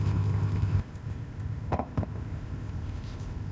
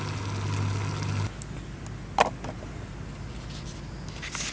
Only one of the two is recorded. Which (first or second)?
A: second